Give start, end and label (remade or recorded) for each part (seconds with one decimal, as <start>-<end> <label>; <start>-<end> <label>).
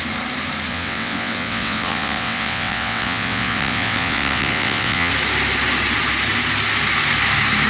0.0-0.7 recorded; 0.7-5.1 remade; 5.1-7.7 recorded